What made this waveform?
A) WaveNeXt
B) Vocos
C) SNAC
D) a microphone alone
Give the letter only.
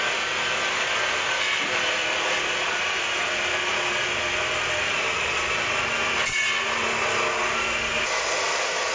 D